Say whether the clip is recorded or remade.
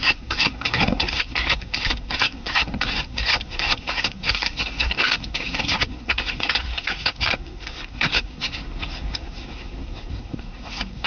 remade